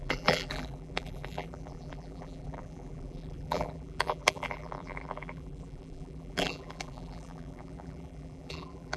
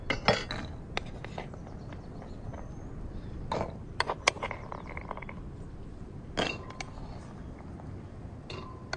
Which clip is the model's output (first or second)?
first